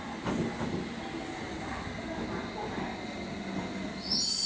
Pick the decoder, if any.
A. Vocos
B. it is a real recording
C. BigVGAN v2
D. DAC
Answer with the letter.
B